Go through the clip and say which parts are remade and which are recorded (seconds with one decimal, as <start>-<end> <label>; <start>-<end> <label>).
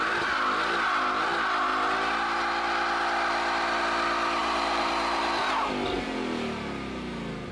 0.0-4.4 recorded; 4.4-5.2 remade; 5.2-7.5 recorded